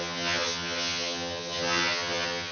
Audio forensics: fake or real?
fake